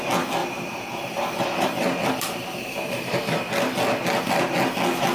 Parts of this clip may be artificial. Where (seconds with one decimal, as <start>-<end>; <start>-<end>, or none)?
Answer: 0.4-3.5